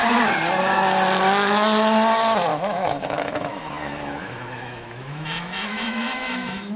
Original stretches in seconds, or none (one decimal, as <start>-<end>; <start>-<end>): 0.0-2.5